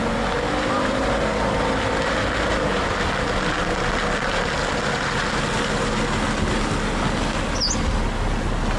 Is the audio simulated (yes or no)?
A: no